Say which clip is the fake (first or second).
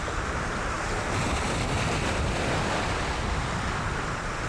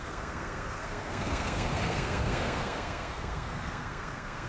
second